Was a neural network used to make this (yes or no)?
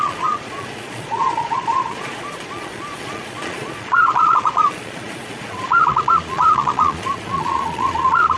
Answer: yes